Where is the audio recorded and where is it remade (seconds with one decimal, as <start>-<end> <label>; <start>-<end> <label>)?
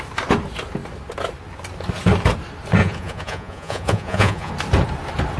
0.0-2.8 recorded; 2.8-4.5 remade; 4.5-5.4 recorded